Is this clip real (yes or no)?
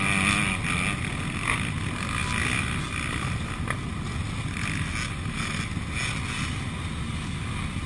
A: yes